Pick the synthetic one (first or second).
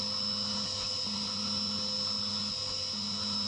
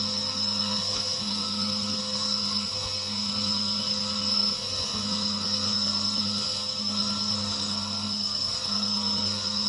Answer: second